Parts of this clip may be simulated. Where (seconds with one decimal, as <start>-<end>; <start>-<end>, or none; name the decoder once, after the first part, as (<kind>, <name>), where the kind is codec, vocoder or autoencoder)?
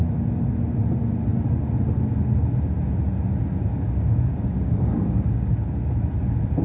3.7-5.9 (codec, DAC)